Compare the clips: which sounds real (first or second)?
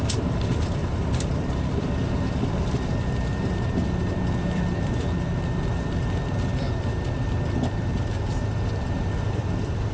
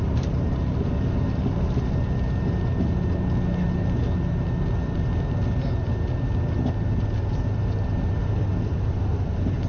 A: second